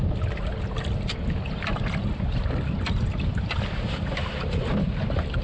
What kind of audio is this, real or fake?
real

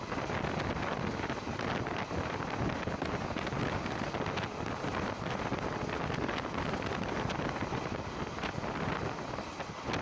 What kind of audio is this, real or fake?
real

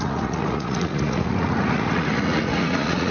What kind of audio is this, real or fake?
fake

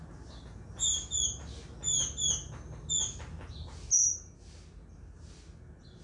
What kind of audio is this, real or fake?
real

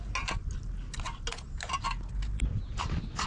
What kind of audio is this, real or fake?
real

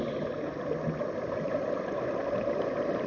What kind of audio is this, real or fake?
real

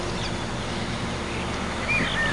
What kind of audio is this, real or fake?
real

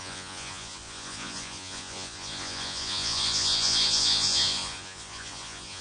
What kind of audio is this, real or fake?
fake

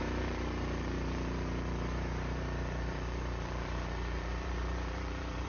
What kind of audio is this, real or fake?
fake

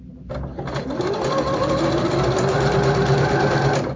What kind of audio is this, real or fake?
real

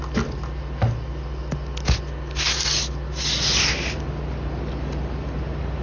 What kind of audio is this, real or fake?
real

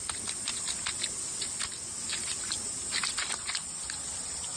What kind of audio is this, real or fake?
real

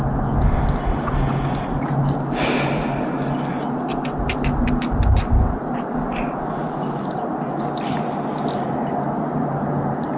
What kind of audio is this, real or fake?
real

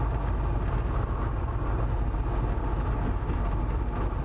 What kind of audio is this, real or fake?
real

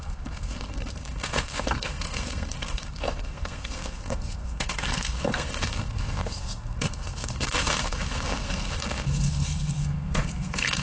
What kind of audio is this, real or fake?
fake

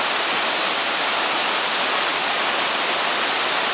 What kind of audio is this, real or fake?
fake